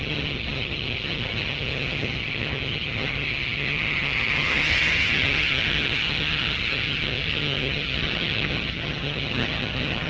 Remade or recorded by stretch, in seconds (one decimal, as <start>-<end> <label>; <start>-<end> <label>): 0.0-10.1 remade